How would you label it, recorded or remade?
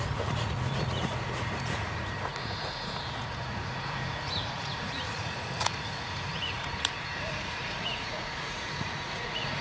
remade